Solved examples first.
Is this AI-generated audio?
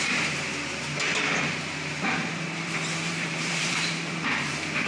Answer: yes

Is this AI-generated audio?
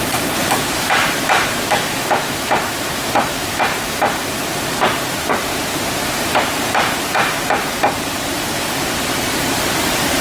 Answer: yes